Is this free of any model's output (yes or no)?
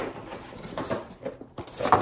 yes